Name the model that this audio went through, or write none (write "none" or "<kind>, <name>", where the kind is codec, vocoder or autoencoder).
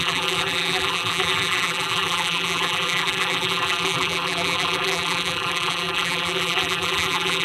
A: vocoder, BigVGAN v2